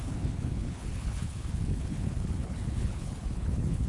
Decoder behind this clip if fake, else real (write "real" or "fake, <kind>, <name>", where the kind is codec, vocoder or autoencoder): fake, codec, HILCodec